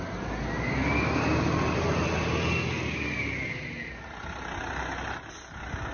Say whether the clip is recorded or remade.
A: recorded